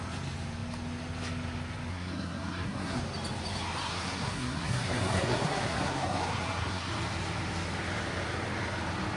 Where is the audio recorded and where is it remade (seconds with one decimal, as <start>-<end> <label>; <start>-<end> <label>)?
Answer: 0.0-1.9 recorded; 1.9-3.0 remade; 3.0-3.8 recorded; 3.8-6.9 remade; 6.9-9.2 recorded